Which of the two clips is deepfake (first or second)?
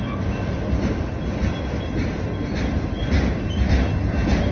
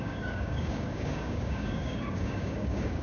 second